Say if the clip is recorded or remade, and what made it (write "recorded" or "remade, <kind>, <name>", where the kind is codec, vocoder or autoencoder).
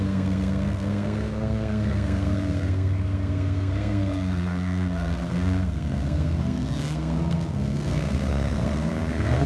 remade, codec, SNAC